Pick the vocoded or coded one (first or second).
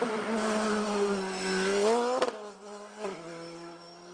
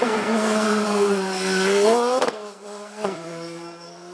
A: second